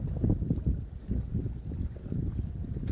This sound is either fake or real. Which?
real